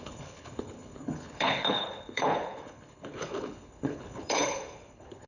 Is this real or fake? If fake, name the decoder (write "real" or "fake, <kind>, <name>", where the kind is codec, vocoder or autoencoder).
fake, codec, HILCodec